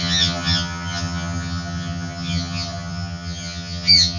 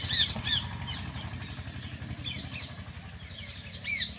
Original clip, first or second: second